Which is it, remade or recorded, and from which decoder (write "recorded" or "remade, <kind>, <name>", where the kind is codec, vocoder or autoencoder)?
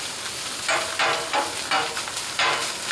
recorded